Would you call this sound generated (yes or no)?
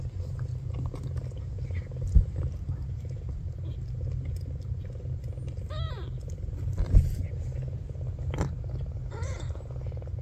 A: no